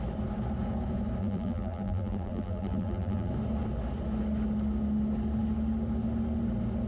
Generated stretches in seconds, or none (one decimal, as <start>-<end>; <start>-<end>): 1.2-3.3